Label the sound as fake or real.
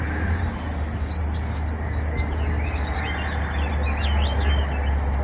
real